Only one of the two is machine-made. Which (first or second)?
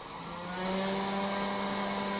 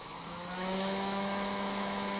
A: second